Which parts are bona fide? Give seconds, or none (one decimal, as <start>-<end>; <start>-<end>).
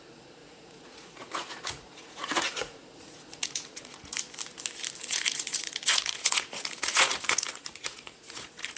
0.0-0.4; 4.2-5.0